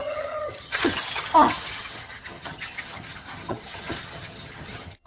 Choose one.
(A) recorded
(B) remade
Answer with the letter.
B